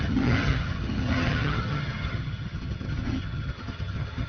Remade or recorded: remade